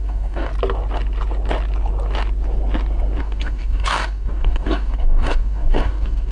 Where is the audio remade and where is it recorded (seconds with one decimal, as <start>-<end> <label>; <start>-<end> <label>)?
0.0-0.5 remade; 0.5-3.2 recorded; 3.2-6.3 remade